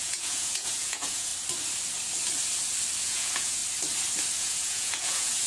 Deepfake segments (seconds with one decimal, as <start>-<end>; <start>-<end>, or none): 0.0-1.3; 3.0-3.6; 4.4-5.5